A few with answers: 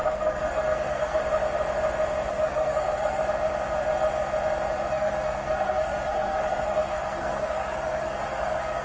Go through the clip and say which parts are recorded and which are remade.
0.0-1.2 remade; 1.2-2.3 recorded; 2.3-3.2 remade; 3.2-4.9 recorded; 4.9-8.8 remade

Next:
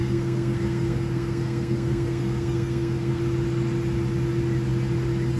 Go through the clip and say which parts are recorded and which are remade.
0.0-3.2 remade; 3.2-5.4 recorded

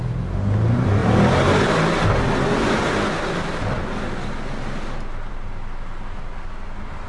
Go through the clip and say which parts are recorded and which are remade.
0.0-7.1 recorded

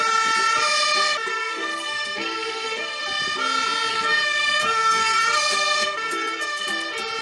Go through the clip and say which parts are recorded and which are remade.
0.0-1.3 recorded; 1.3-3.0 remade; 3.0-3.9 recorded; 3.9-6.6 remade; 6.6-7.2 recorded